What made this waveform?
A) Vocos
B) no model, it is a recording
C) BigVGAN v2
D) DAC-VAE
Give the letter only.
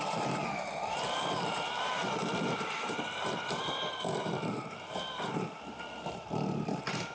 C